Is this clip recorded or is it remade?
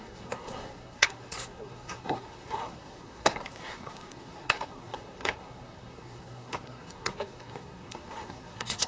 remade